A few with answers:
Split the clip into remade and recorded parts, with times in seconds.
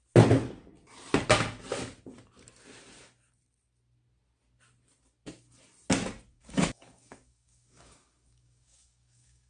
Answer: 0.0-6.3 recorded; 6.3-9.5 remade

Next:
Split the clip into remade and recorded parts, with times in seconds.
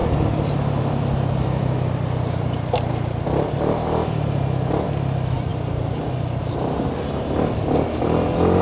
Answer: 0.0-2.9 remade; 2.9-8.6 recorded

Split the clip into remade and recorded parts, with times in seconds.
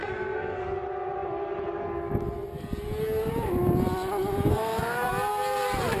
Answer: 0.0-0.6 remade; 0.6-4.5 recorded; 4.5-5.1 remade; 5.1-6.0 recorded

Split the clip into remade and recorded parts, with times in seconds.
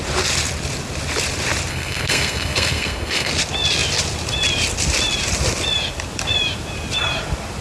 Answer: 0.0-1.7 recorded; 1.7-3.3 remade; 3.3-7.6 recorded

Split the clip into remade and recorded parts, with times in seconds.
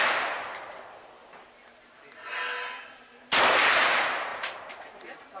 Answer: 0.0-1.2 remade; 1.2-3.4 recorded; 3.4-5.4 remade